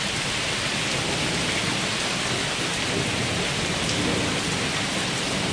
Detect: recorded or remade recorded